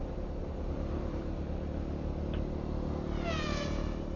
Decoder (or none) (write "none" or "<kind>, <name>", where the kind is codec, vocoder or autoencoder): none